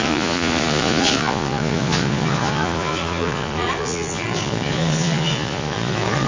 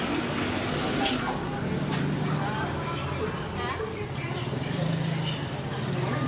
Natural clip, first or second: second